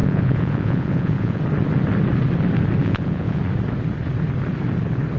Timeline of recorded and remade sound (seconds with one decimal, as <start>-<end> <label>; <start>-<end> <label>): 0.0-1.4 remade; 1.4-2.8 recorded; 2.8-3.4 remade; 3.4-5.2 recorded

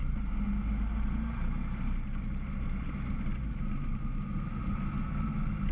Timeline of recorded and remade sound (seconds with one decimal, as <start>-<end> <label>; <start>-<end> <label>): 0.0-5.7 recorded

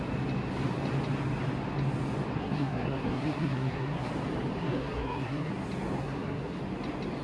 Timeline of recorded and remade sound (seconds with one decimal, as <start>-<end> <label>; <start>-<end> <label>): 0.0-2.4 recorded; 2.4-4.1 remade; 4.1-4.6 recorded; 4.6-5.5 remade; 5.5-6.0 recorded; 6.0-6.6 remade; 6.6-7.2 recorded

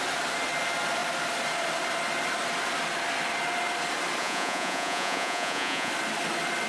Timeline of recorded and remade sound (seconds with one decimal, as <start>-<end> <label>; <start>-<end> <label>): 0.0-4.2 recorded; 4.2-5.9 remade; 5.9-6.7 recorded

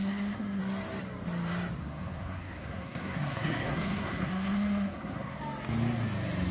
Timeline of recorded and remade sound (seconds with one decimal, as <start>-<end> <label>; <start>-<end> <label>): 0.0-0.6 remade; 0.6-1.8 recorded; 1.8-5.4 remade; 5.4-6.5 recorded

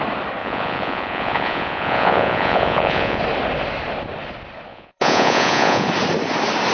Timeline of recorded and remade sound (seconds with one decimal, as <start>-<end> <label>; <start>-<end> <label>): 0.0-0.4 recorded; 0.4-3.2 remade; 3.2-4.7 recorded; 4.7-5.9 remade; 5.9-6.7 recorded